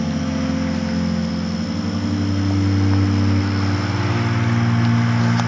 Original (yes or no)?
yes